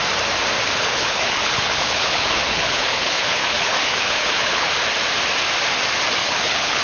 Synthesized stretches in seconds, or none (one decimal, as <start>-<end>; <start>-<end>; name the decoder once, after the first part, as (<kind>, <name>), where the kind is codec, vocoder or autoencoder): 0.8-4.7 (codec, HILCodec); 6.2-6.8